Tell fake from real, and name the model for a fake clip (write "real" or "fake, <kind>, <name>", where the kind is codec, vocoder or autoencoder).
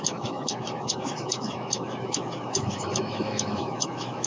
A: fake, autoencoder, DAC-VAE